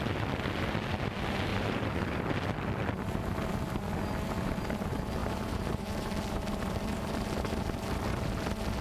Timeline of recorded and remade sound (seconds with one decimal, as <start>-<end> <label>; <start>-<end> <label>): 0.0-1.5 recorded; 1.5-2.2 remade; 2.2-5.2 recorded; 5.2-7.9 remade; 7.9-8.8 recorded